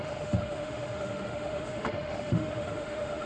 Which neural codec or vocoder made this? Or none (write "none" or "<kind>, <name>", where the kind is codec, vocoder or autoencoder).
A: autoencoder, DAC-VAE